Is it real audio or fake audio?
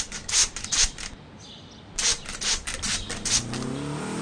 real